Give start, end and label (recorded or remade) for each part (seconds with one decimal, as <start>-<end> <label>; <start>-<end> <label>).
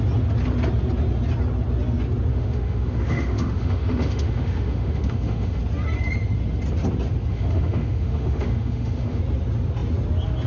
0.0-2.3 recorded; 2.3-5.6 remade; 5.6-7.3 recorded; 7.3-9.2 remade; 9.2-10.5 recorded